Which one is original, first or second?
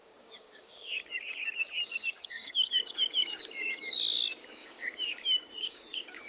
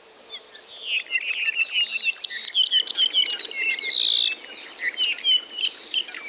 second